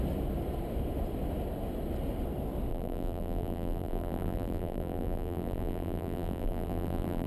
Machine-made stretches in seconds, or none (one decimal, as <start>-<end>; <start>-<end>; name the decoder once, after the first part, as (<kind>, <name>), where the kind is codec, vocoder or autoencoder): 2.7-7.3 (vocoder, BigVGAN v2)